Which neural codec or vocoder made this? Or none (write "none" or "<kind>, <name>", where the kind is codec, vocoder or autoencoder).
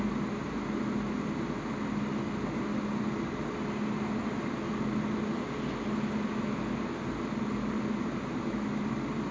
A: none